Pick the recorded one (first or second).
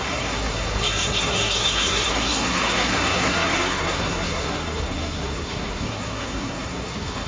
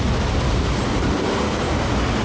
second